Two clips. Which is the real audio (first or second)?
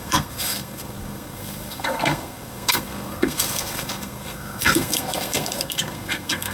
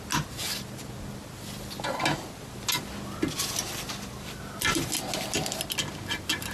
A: second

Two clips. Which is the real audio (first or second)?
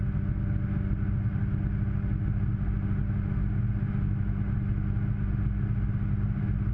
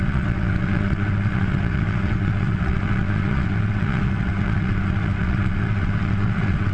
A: first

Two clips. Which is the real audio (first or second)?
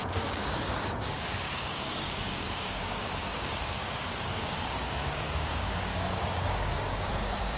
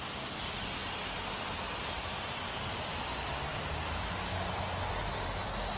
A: second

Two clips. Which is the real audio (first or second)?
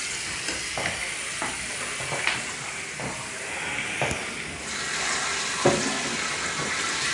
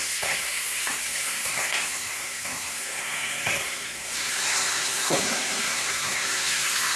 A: first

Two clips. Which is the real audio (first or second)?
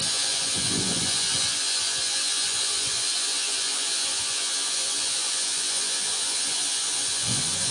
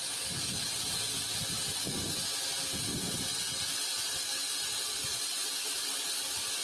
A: second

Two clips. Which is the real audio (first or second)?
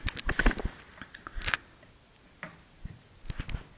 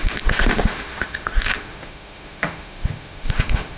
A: first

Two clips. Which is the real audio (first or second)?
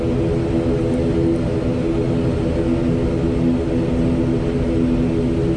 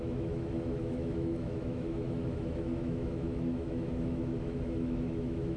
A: first